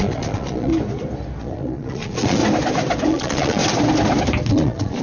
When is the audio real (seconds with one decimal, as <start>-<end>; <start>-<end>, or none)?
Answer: 0.7-1.4; 2.4-3.1; 3.6-4.5